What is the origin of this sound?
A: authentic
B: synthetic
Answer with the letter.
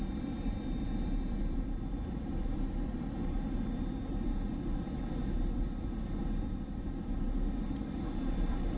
B